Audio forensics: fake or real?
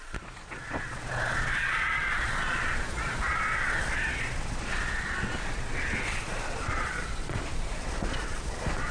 fake